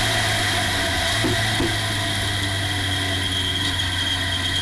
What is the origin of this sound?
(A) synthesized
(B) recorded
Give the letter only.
B